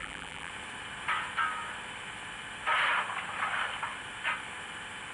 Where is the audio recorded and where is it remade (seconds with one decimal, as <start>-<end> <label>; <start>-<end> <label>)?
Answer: 0.0-0.5 remade; 0.5-5.1 recorded